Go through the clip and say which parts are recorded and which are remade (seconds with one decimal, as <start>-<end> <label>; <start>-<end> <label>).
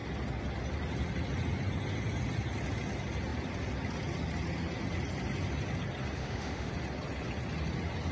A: 0.0-6.2 recorded; 6.2-6.7 remade; 6.7-8.1 recorded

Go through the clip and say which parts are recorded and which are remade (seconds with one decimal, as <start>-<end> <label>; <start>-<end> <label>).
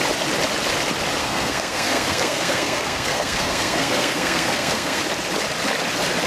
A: 0.0-1.2 recorded; 1.2-5.0 remade; 5.0-6.3 recorded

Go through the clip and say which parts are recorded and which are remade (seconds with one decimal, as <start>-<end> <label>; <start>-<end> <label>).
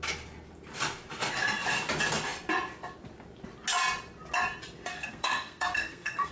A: 0.0-4.9 recorded; 4.9-6.3 remade